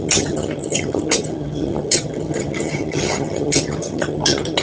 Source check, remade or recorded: remade